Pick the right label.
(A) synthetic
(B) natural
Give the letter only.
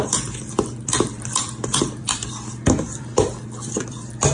A